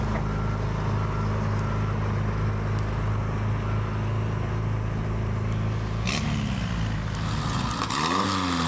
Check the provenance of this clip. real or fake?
real